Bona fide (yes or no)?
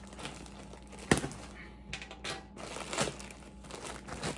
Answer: yes